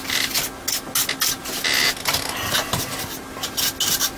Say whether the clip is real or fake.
real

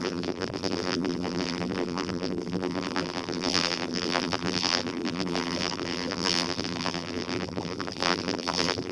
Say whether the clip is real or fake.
fake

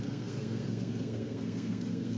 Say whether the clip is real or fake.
fake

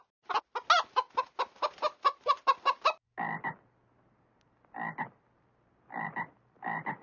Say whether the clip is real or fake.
real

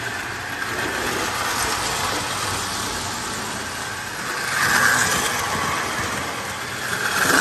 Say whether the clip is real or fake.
real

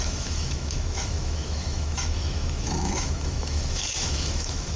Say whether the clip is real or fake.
fake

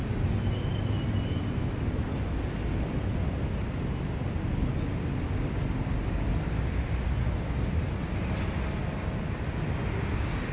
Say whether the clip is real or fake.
real